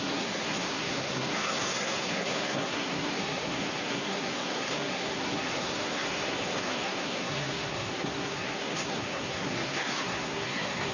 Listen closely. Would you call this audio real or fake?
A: fake